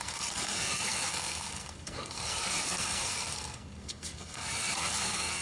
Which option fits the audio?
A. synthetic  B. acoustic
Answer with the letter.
A